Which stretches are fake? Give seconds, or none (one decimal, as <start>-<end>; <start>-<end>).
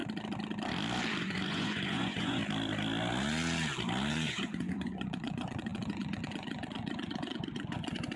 1.2-2.4; 4.1-8.2